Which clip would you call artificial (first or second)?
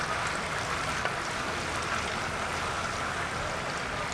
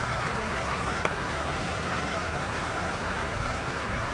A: second